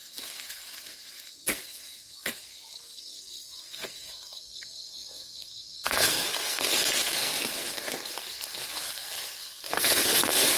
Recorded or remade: remade